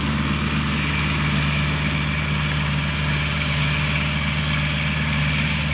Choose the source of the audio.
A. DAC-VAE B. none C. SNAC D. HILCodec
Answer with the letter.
B